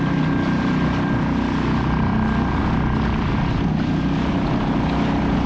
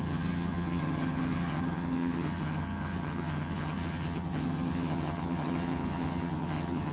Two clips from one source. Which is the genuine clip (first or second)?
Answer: first